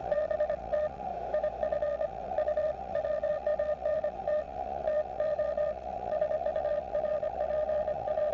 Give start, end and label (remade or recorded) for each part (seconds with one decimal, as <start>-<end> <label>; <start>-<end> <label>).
0.0-1.1 remade; 1.1-1.6 recorded; 1.6-8.3 remade